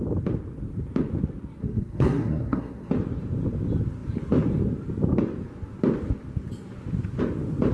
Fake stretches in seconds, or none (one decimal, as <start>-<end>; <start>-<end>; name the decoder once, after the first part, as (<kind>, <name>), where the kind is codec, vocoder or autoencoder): 1.6-2.9 (codec, SNAC)